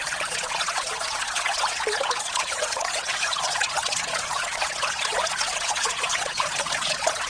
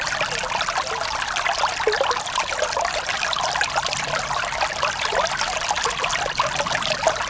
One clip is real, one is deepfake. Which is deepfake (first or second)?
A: first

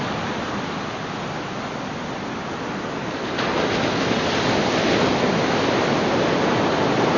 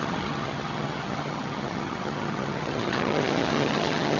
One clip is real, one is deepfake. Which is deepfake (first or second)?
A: second